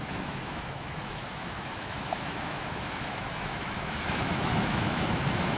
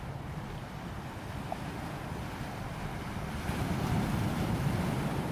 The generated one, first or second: first